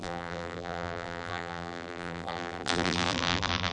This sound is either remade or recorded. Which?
remade